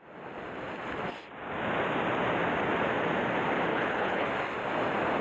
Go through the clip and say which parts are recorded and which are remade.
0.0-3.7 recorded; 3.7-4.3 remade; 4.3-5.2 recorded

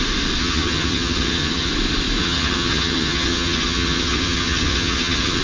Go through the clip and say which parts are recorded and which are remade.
0.0-0.4 recorded; 0.4-1.7 remade; 1.7-2.2 recorded; 2.2-5.4 remade